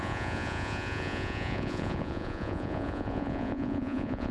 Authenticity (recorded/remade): remade